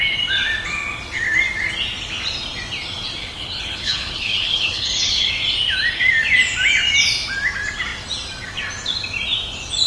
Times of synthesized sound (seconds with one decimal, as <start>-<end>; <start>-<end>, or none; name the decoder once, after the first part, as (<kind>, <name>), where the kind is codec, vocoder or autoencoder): 3.2-5.3 (codec, HILCodec)